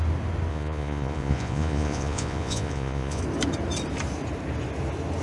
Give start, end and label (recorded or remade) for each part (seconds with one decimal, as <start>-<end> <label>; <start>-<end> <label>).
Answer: 0.0-0.5 recorded; 0.5-3.2 remade; 3.2-5.2 recorded